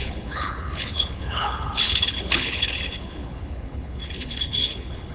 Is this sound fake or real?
fake